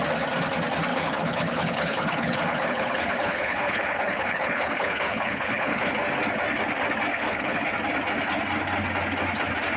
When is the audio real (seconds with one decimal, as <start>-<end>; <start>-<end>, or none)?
0.0-0.9; 5.9-7.1; 7.7-9.8